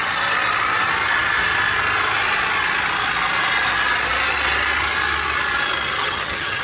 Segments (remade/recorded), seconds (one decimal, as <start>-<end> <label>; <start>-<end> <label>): 0.0-6.0 recorded; 6.0-6.6 remade